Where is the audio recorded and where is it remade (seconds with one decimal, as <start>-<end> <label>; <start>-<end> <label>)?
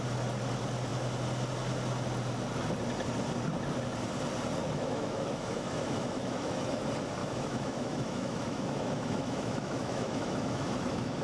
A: 0.0-4.6 recorded; 4.6-6.8 remade; 6.8-7.2 recorded; 7.2-11.2 remade